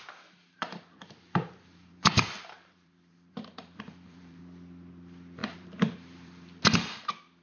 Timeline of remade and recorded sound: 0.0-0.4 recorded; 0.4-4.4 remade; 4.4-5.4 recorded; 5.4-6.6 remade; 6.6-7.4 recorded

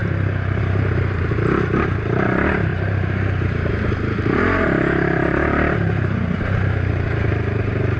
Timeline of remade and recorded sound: 0.0-2.7 remade; 2.7-3.7 recorded; 3.7-8.0 remade

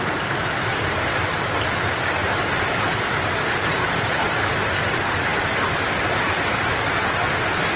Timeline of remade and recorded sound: 0.0-2.2 recorded; 2.2-4.6 remade; 4.6-7.8 recorded

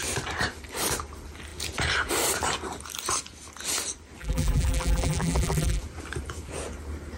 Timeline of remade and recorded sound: 0.0-4.2 recorded; 4.2-5.8 remade; 5.8-7.2 recorded

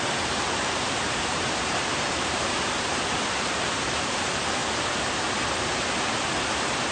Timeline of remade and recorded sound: 0.0-4.6 remade; 4.6-6.5 recorded; 6.5-6.9 remade

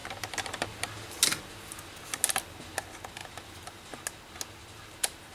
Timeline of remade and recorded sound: 0.0-3.2 recorded; 3.2-4.0 remade; 4.0-4.6 recorded; 4.6-5.3 remade

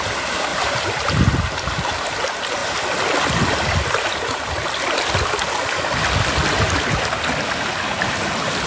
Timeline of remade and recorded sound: 0.0-0.5 recorded; 0.5-1.1 remade; 1.1-8.7 recorded